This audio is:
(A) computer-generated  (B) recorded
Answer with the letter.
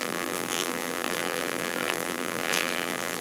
A